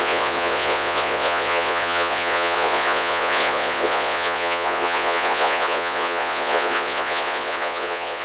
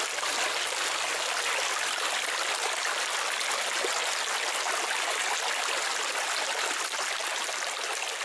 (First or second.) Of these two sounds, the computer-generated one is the first